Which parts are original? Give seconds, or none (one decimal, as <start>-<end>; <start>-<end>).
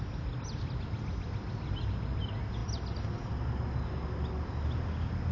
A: 0.0-5.3